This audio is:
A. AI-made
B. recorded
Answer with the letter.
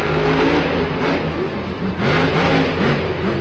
B